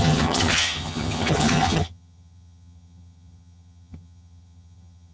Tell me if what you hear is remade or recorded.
remade